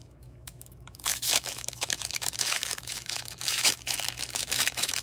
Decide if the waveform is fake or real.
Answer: fake